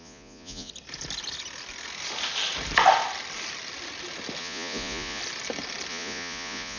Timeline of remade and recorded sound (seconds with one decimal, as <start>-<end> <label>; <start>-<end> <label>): 0.0-0.7 remade; 0.7-4.4 recorded; 4.4-5.2 remade; 5.2-5.9 recorded; 5.9-6.8 remade